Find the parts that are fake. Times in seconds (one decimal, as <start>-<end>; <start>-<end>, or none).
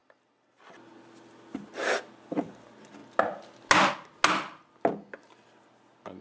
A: none